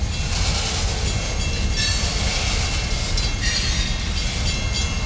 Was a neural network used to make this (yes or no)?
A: no